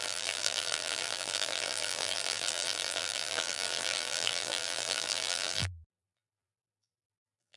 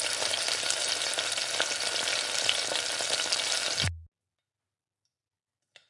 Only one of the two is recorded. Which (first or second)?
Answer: second